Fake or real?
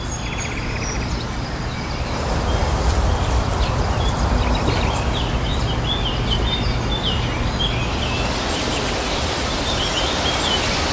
real